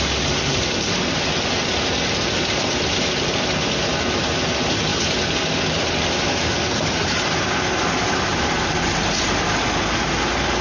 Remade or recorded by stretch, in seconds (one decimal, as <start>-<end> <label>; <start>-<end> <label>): 0.0-10.6 recorded